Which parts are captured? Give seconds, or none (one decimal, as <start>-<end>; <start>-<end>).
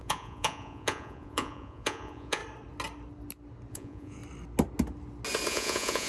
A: 2.4-3.7; 4.2-5.5